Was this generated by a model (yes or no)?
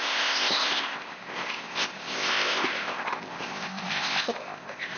yes